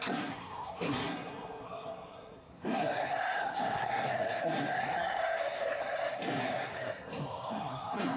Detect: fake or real fake